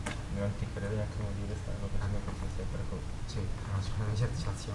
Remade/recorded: recorded